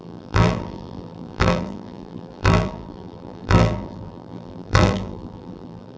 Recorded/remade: remade